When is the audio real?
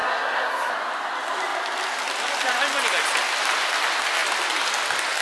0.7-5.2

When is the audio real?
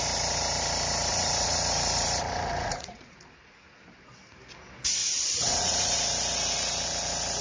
0.0-1.1; 3.8-5.0; 6.0-7.4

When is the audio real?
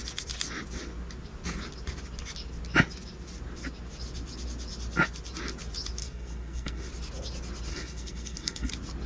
0.0-6.0; 6.9-7.7; 8.7-9.1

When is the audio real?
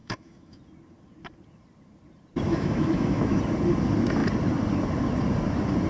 0.6-2.5; 3.4-5.9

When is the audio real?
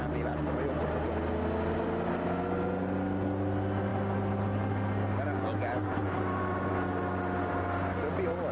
0.0-8.5